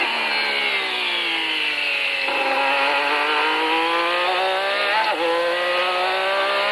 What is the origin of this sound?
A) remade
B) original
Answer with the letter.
B